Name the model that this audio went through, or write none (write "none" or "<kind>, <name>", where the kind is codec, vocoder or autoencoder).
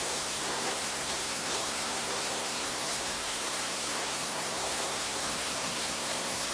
codec, SNAC